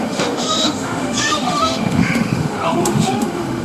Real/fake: fake